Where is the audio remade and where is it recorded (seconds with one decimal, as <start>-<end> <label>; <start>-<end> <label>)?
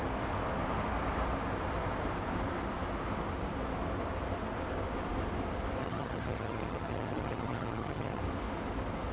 0.0-5.8 recorded; 5.8-8.2 remade; 8.2-9.1 recorded